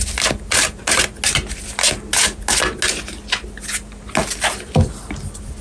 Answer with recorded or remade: recorded